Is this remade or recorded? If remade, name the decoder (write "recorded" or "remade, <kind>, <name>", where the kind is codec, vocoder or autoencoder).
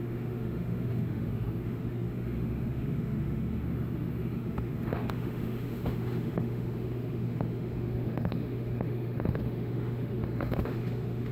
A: remade, autoencoder, DAC-VAE